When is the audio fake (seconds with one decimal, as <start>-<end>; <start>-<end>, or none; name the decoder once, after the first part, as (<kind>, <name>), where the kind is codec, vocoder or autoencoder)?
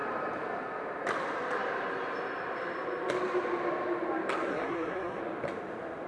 4.5-5.2 (codec, SNAC)